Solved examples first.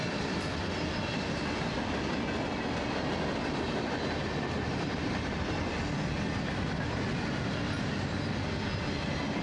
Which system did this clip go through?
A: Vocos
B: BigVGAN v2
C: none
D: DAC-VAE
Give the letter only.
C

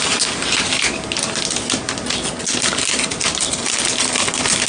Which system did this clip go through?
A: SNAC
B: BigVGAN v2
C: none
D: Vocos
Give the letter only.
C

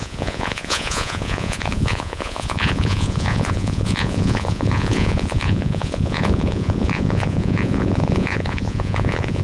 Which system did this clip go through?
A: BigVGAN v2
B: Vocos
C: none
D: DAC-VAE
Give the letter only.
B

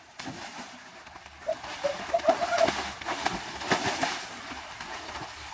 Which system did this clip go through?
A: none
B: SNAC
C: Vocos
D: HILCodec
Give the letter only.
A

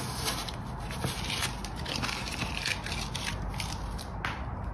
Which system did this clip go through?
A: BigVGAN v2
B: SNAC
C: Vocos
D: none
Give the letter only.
D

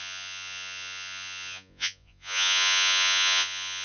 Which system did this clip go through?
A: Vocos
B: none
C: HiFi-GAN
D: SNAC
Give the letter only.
A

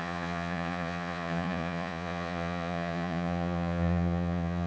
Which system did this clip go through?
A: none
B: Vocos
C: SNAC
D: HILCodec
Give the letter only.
B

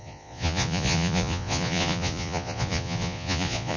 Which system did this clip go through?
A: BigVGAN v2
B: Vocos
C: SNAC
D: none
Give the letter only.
B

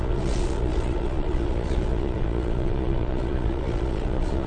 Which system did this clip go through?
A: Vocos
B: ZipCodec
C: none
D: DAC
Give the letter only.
A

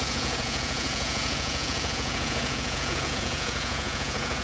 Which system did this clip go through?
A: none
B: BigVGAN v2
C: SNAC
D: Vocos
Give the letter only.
D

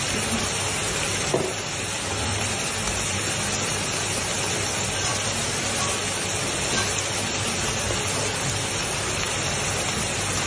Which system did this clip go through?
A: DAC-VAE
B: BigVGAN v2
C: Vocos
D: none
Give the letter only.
D